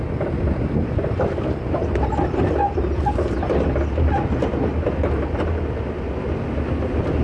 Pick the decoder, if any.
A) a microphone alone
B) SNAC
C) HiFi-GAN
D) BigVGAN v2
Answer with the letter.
A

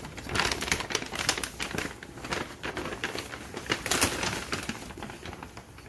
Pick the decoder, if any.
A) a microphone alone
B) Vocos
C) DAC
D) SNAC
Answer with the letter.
A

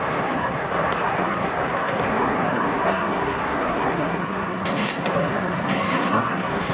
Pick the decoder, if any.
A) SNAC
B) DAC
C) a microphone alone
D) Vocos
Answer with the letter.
A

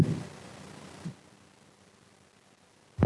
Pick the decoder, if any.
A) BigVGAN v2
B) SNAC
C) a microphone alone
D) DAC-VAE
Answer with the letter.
C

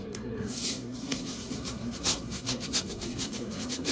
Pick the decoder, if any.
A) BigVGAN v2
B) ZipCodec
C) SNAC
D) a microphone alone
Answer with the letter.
C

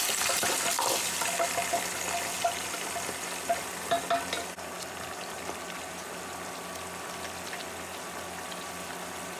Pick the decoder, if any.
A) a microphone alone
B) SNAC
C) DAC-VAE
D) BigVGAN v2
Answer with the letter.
A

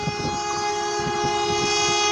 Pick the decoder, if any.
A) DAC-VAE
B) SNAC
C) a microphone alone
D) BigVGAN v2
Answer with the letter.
C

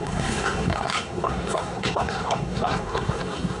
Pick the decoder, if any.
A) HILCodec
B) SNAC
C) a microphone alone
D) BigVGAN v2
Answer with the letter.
B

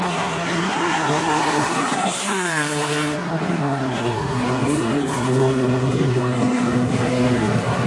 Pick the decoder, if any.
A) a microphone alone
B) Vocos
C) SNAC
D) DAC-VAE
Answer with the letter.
C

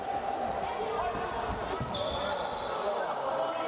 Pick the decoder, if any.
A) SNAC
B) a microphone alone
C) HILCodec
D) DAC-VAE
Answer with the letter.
B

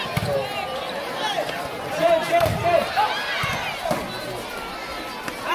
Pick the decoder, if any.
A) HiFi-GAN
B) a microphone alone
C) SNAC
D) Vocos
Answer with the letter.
B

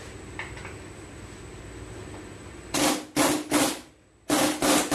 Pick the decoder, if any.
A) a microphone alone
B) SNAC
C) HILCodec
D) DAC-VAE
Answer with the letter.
A